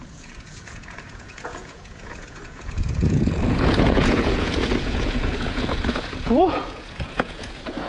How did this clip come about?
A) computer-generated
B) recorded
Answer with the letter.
A